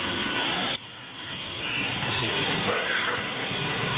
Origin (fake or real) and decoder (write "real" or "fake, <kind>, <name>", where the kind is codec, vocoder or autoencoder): fake, codec, SNAC